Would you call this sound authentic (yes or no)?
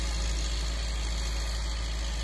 yes